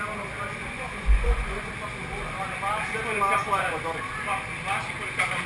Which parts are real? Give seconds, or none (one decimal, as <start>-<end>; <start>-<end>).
0.0-0.6; 1.7-5.5